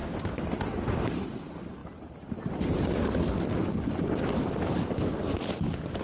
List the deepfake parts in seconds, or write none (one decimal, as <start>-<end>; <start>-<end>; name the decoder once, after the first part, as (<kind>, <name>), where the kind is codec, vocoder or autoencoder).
none